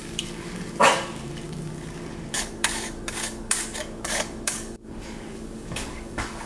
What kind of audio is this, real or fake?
fake